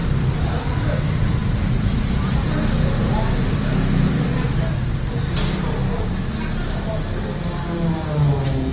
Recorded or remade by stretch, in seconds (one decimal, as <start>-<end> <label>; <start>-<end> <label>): 0.0-0.5 remade; 0.5-8.7 recorded